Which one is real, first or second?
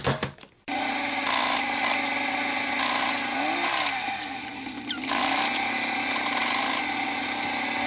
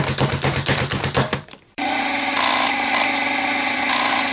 first